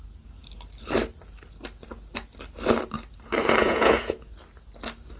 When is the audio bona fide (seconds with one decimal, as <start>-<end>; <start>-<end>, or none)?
0.0-3.6; 4.3-5.2